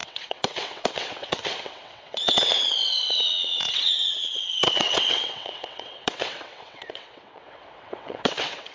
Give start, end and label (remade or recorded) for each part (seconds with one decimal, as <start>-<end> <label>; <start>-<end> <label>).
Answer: 0.0-8.7 remade